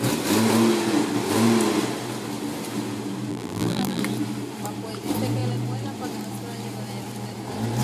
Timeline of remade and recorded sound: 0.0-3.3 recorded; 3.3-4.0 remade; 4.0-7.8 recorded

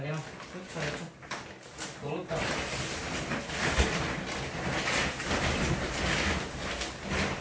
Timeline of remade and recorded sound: 0.0-7.4 recorded

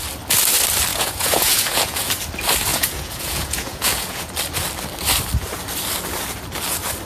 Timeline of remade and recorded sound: 0.0-0.9 recorded; 0.9-2.1 remade; 2.1-2.7 recorded; 2.7-4.3 remade; 4.3-7.0 recorded

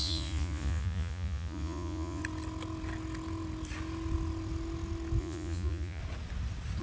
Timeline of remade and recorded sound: 0.0-2.2 remade; 2.2-5.2 recorded; 5.2-6.0 remade; 6.0-6.8 recorded

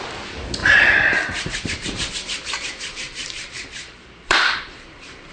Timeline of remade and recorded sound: 0.0-0.6 recorded; 0.6-2.1 remade; 2.1-2.9 recorded; 2.9-5.3 remade

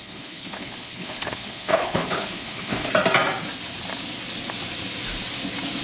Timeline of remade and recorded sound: 0.0-2.9 remade; 2.9-5.8 recorded

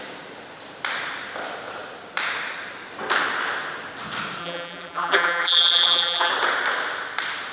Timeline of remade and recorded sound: 0.0-4.4 recorded; 4.4-6.3 remade; 6.3-7.5 recorded